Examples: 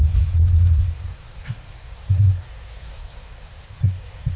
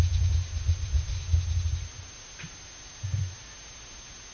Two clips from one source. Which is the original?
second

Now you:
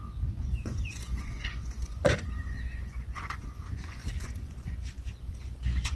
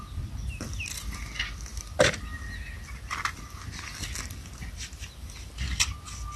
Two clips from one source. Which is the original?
second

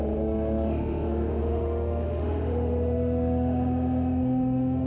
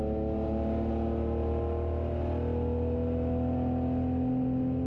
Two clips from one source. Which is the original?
second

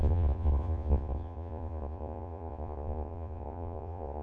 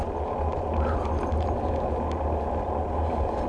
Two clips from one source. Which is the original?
second